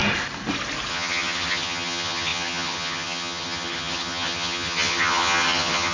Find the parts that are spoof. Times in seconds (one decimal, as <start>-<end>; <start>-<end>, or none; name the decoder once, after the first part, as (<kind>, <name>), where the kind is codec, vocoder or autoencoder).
0.9-5.9 (vocoder, HiFi-GAN)